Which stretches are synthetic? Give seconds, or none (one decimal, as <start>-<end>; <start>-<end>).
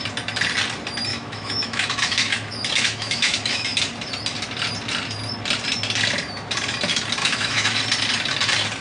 1.1-3.8; 7.2-7.8